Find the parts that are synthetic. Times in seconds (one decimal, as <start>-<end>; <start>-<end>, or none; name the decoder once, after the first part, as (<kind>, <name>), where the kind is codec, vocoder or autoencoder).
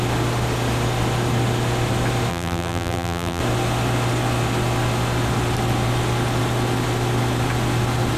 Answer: 2.3-3.4 (vocoder, BigVGAN v2)